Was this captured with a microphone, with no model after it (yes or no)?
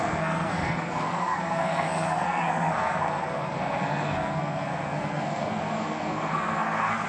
no